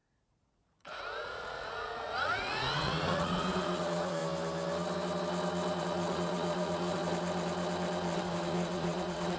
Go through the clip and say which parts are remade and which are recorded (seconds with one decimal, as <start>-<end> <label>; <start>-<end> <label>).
0.0-4.2 remade; 4.2-5.8 recorded; 5.8-7.0 remade; 7.0-8.2 recorded; 8.2-9.4 remade